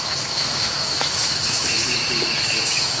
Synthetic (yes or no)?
yes